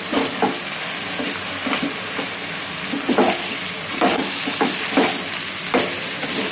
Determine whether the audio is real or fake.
real